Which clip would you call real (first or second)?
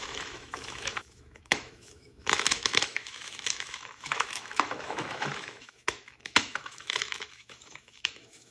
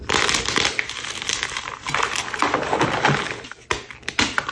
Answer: second